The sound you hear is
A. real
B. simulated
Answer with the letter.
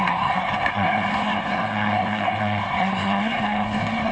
B